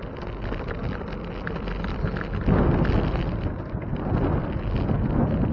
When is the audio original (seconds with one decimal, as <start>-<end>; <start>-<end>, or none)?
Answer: 0.0-5.5